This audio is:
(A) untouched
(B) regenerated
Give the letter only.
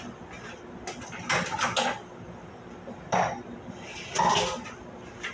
A